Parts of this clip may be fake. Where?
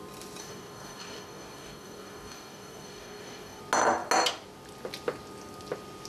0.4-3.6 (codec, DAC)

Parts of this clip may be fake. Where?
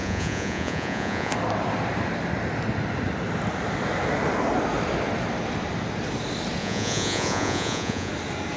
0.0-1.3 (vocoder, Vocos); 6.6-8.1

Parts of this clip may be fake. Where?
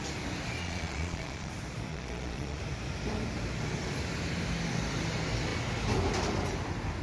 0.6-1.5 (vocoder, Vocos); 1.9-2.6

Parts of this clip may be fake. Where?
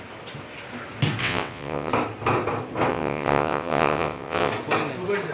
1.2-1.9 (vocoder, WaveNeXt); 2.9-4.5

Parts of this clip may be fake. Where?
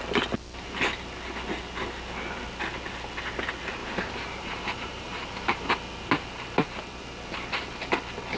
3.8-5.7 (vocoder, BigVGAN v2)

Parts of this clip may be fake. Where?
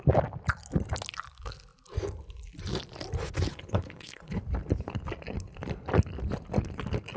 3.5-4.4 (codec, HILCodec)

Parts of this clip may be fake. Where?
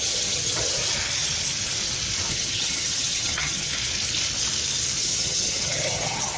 0.0-0.8 (vocoder, HiFi-GAN); 2.3-3.7; 5.0-6.4